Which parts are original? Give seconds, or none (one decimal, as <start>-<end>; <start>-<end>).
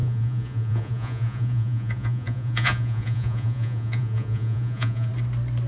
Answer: 5.1-5.7